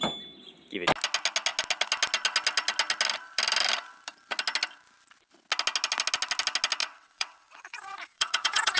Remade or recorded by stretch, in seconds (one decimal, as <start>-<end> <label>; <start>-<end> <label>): 0.0-6.8 recorded; 6.8-8.8 remade